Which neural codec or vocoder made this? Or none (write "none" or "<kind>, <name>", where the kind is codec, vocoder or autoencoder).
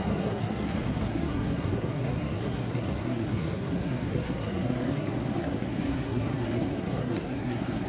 codec, SNAC